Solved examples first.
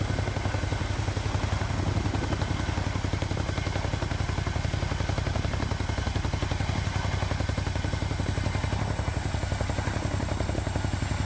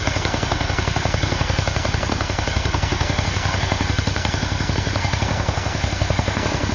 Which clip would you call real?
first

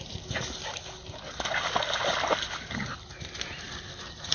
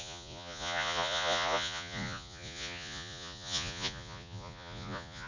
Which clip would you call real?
first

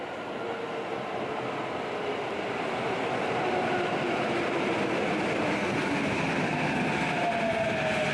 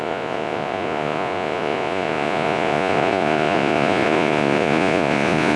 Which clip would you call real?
first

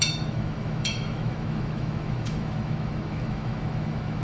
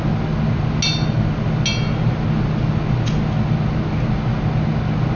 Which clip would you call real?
second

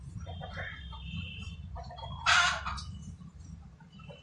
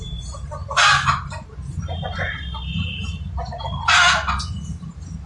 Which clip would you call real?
second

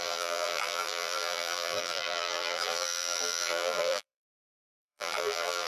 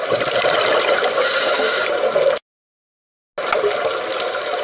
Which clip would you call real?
second